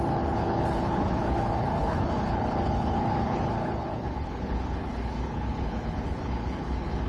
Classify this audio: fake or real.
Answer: fake